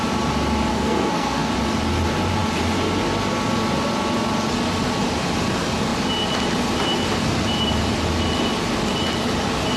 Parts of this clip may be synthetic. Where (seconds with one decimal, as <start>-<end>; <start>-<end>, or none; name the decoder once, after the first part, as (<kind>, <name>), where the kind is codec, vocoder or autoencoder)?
0.7-1.5 (codec, SNAC)